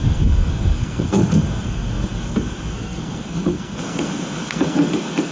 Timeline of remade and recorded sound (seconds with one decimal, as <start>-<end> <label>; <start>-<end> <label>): 0.0-5.3 remade